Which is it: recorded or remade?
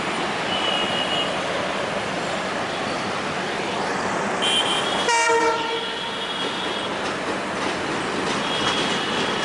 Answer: recorded